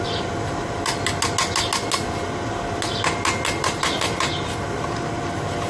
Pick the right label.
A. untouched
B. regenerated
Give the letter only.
A